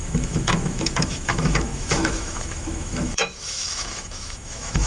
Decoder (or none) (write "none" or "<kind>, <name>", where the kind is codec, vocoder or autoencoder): autoencoder, DAC-VAE